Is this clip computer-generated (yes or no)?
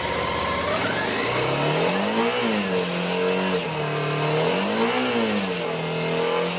no